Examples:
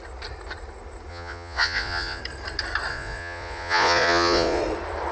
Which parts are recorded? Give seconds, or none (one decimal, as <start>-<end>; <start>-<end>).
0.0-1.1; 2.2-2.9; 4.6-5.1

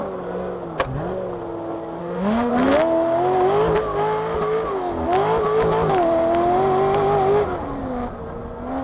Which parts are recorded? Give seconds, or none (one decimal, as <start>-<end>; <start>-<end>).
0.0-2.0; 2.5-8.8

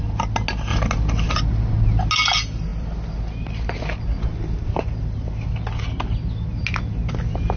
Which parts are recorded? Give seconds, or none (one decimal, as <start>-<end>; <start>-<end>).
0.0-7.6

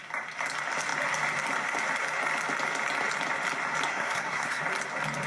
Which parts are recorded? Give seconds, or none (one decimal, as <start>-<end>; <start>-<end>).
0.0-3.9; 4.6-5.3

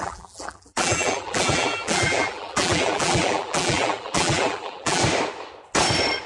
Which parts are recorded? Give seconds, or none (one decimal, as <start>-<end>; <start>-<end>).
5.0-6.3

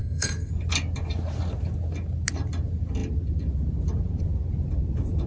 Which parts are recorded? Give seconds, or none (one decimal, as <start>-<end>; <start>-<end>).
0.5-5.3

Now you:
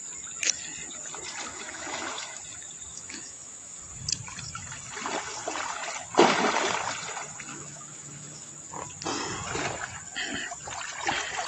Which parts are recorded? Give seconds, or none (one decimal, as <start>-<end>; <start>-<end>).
0.0-1.5; 2.4-2.9; 3.8-7.5; 8.5-11.5

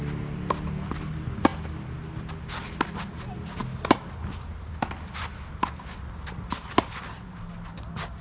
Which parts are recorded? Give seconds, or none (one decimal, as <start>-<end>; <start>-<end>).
0.0-8.2